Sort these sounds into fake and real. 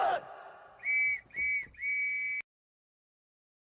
real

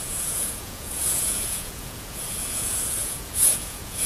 fake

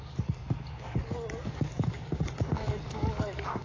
fake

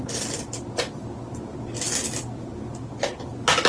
real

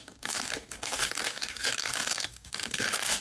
fake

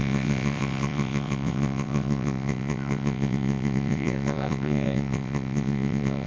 fake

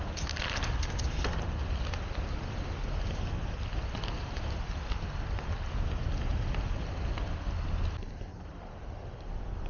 real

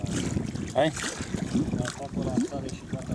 real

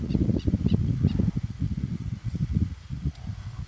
fake